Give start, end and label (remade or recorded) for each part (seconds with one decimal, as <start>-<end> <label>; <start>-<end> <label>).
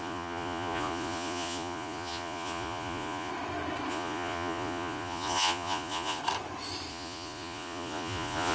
0.0-3.3 remade; 3.3-3.9 recorded; 3.9-6.2 remade; 6.2-6.9 recorded; 6.9-8.5 remade